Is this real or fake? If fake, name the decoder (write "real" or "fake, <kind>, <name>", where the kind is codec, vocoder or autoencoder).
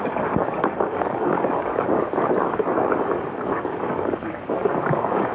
fake, codec, DAC